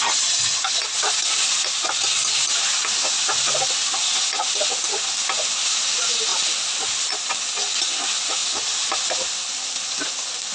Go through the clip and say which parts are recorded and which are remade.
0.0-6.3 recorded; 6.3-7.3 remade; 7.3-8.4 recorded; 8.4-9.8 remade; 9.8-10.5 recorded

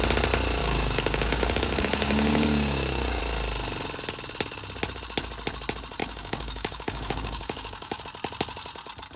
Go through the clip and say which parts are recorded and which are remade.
0.0-0.6 recorded; 0.6-3.2 remade; 3.2-6.0 recorded; 6.0-8.0 remade; 8.0-9.2 recorded

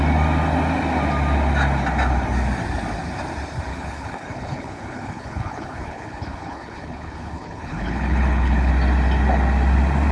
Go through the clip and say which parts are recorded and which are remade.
0.0-3.7 recorded; 3.7-8.7 remade; 8.7-10.1 recorded

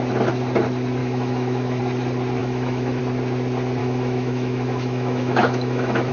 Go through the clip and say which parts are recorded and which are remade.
0.0-1.0 recorded; 1.0-1.8 remade; 1.8-2.4 recorded; 2.4-3.0 remade; 3.0-3.8 recorded; 3.8-6.1 remade

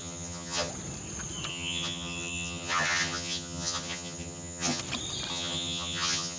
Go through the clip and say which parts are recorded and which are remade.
0.0-0.7 remade; 0.7-1.5 recorded; 1.5-4.8 remade; 4.8-5.3 recorded; 5.3-6.4 remade